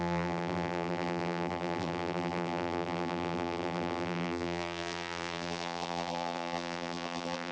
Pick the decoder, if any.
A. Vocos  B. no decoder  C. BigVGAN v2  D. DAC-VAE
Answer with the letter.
C